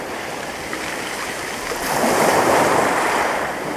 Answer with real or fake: real